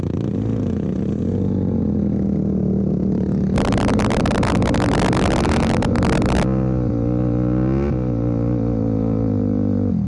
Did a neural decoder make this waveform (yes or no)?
no